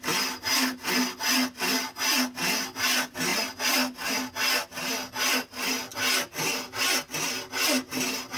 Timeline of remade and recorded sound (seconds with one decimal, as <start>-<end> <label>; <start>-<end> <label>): 0.0-8.4 recorded